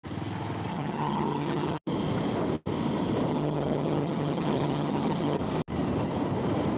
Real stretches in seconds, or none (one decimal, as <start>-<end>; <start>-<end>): 0.0-0.7; 1.8-3.3; 5.4-6.8